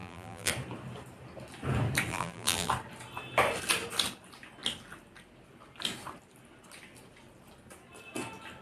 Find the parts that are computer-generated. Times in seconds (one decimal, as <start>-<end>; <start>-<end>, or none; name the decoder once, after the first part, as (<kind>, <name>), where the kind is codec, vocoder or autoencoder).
0.0-0.5 (vocoder, BigVGAN v2); 2.1-2.7